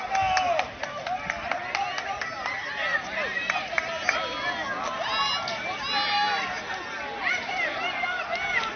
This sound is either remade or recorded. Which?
recorded